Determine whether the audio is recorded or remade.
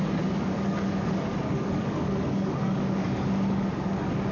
remade